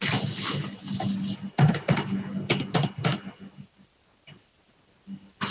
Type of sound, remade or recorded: recorded